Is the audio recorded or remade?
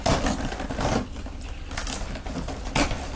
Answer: recorded